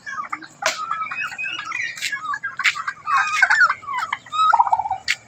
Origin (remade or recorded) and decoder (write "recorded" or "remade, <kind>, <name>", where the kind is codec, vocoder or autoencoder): recorded